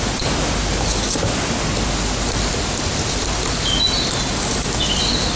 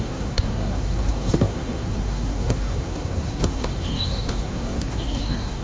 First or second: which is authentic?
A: first